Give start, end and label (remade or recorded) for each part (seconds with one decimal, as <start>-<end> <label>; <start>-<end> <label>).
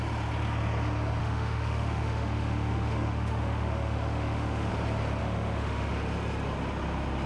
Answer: 0.0-1.2 recorded; 1.2-4.7 remade; 4.7-5.2 recorded; 5.2-5.9 remade; 5.9-7.3 recorded